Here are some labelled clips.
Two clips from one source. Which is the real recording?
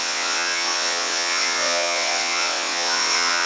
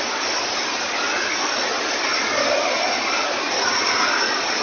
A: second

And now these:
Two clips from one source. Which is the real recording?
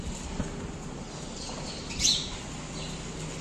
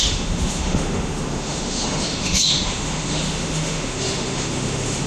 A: first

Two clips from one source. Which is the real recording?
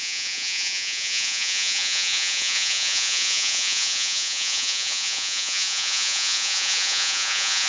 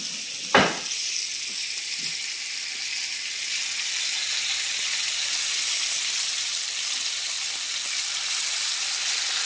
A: second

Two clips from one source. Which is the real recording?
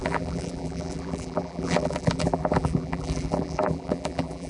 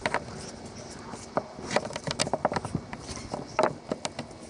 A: second